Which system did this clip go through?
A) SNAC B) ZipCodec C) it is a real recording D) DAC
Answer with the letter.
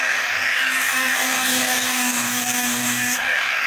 D